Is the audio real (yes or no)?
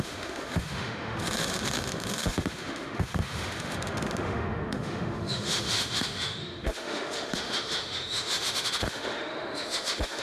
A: no